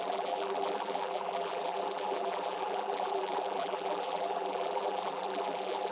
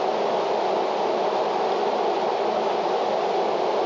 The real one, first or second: second